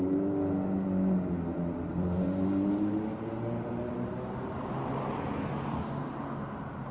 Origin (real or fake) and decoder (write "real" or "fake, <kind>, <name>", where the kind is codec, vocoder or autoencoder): real